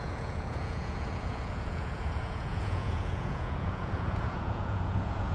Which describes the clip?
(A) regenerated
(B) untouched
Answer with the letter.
A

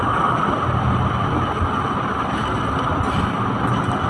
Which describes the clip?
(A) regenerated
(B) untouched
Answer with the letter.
B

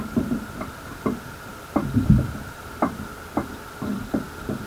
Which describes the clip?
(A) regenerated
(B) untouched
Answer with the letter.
A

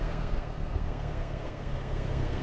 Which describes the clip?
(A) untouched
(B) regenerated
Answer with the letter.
B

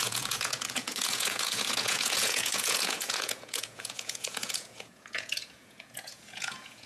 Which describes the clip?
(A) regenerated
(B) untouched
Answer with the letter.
A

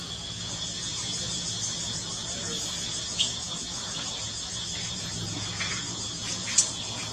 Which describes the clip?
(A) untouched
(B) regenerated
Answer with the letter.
B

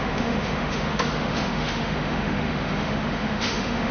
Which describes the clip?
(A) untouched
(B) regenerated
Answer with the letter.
B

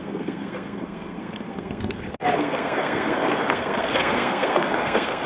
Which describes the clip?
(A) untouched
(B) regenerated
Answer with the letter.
B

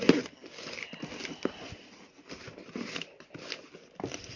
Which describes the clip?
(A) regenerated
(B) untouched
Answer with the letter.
B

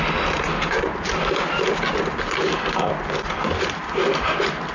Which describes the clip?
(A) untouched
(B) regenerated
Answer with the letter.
A